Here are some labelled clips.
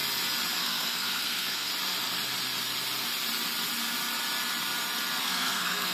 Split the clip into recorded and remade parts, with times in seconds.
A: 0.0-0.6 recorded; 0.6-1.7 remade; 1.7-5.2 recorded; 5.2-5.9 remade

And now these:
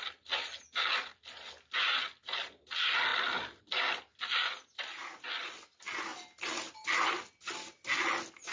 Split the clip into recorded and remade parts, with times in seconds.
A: 0.0-8.5 recorded